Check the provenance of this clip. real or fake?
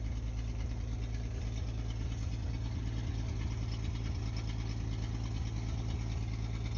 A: real